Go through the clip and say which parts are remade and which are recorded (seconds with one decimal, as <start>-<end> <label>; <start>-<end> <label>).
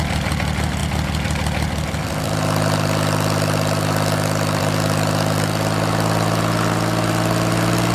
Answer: 0.0-7.9 recorded